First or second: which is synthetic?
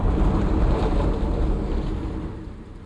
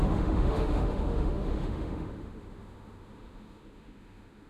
second